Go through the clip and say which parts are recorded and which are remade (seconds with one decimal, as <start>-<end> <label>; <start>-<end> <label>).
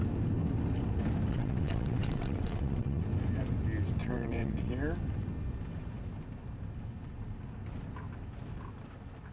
0.0-1.3 recorded; 1.3-3.0 remade; 3.0-4.0 recorded; 4.0-4.7 remade; 4.7-9.3 recorded